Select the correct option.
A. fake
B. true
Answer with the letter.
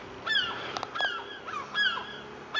B